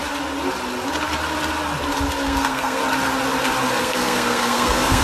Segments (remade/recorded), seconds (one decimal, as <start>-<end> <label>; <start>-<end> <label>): 0.0-2.1 recorded; 2.1-2.8 remade; 2.8-3.8 recorded; 3.8-5.0 remade